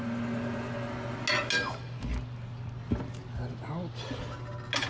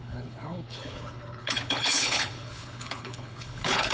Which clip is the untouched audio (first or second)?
first